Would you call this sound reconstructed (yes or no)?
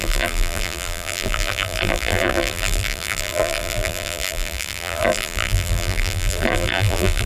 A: yes